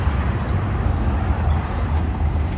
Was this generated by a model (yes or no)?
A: no